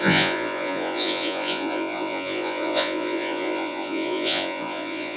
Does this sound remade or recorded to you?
remade